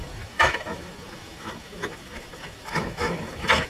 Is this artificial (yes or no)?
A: yes